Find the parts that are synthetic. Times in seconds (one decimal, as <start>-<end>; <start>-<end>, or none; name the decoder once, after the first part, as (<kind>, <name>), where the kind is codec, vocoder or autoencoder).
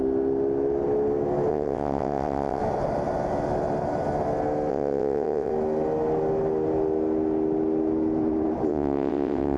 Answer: 1.5-2.6 (vocoder, WaveNeXt); 4.7-5.5; 8.7-9.6